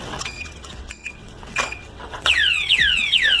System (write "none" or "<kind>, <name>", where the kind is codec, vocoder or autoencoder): vocoder, WaveNeXt